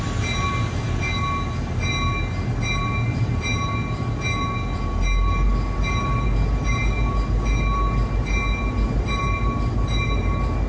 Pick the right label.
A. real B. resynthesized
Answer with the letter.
A